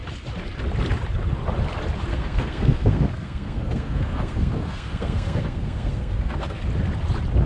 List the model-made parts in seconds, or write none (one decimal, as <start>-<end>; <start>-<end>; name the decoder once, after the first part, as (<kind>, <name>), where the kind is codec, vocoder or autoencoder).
2.1-6.6 (codec, SNAC)